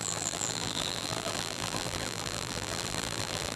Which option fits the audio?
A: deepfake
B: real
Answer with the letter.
A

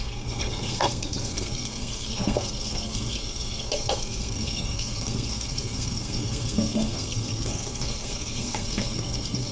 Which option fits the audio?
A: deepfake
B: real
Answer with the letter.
A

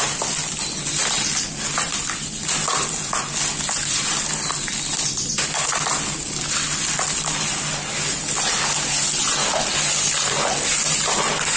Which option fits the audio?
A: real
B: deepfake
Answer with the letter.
A